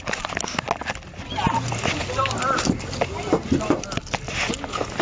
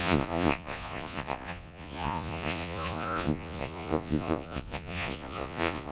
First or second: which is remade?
second